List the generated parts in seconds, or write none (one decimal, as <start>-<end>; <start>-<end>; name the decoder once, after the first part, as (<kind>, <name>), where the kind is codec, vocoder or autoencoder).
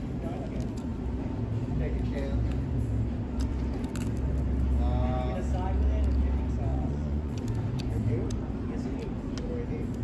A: 6.7-7.4 (vocoder, Vocos)